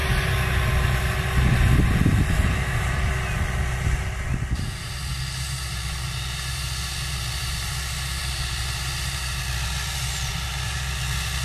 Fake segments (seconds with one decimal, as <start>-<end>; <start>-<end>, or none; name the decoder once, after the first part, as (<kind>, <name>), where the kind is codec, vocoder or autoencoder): none